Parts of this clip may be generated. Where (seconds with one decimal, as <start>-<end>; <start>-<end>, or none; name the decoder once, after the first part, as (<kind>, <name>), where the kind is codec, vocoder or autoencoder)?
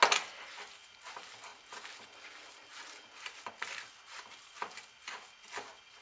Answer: none